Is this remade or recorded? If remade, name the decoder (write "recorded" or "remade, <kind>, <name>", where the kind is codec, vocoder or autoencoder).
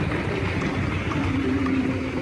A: remade, vocoder, BigVGAN v2